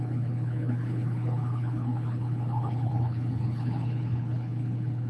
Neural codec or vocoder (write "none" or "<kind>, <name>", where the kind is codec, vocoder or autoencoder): codec, HILCodec